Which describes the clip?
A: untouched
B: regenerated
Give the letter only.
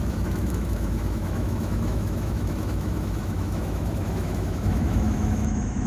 B